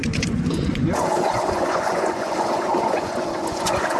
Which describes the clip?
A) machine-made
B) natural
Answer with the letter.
A